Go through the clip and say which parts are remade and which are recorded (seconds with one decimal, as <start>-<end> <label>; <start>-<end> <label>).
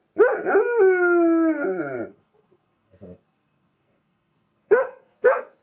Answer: 0.0-2.1 recorded; 2.1-5.6 remade